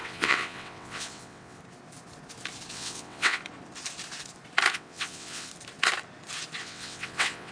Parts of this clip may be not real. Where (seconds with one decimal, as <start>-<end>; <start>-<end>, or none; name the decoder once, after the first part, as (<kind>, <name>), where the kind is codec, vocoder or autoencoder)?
0.0-1.6 (vocoder, WaveNeXt); 2.7-3.4; 4.7-5.5; 6.6-7.5